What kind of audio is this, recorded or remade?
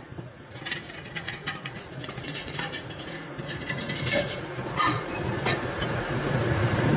remade